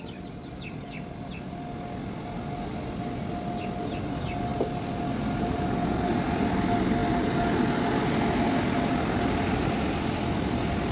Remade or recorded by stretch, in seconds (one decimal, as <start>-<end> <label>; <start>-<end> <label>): 0.0-10.9 recorded